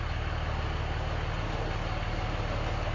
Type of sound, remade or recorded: recorded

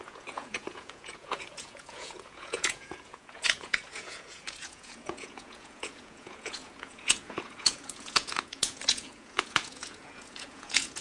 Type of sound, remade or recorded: remade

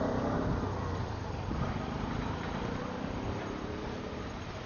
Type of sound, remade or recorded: remade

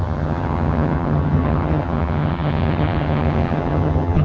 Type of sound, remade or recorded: remade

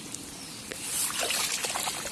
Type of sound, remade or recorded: recorded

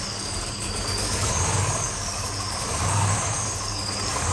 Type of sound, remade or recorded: remade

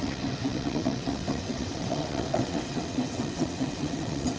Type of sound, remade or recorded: remade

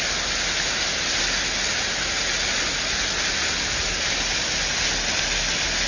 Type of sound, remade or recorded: recorded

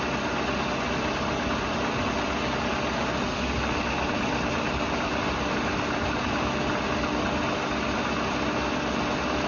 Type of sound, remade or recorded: recorded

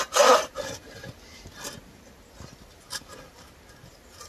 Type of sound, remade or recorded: recorded